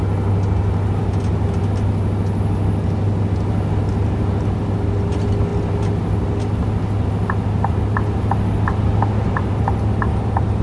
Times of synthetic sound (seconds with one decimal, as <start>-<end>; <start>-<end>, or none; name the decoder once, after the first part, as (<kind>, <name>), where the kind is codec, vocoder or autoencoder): none